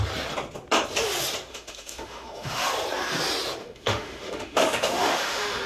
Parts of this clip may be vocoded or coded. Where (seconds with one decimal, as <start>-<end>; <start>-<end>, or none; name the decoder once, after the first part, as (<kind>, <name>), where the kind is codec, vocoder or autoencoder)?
1.5-2.7 (autoencoder, DAC-VAE); 3.6-5.7